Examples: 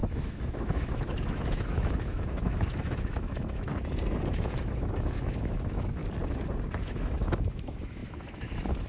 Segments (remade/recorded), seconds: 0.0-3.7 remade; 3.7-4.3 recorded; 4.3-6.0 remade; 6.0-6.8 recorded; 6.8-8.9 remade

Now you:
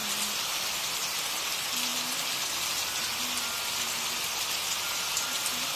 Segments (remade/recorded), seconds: 0.0-5.8 recorded

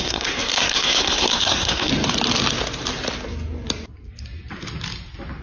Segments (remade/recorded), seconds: 0.0-1.9 remade; 1.9-5.4 recorded

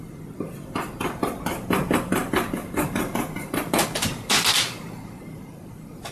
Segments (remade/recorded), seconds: 0.0-6.1 recorded

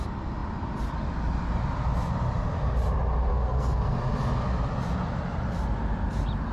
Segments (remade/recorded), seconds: 0.0-3.3 recorded; 3.3-4.0 remade; 4.0-6.5 recorded

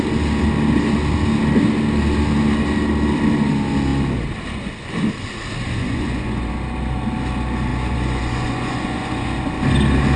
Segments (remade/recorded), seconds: 0.0-5.6 recorded; 5.6-6.5 remade; 6.5-7.7 recorded; 7.7-9.4 remade; 9.4-10.2 recorded

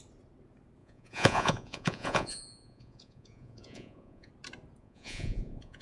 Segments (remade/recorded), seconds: 0.0-0.8 recorded; 0.8-4.3 remade; 4.3-4.8 recorded; 4.8-5.8 remade

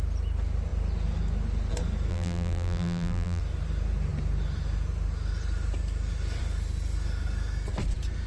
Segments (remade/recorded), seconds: 0.0-2.1 recorded; 2.1-3.4 remade; 3.4-8.3 recorded